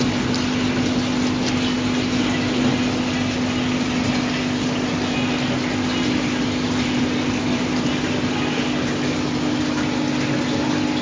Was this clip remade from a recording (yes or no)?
no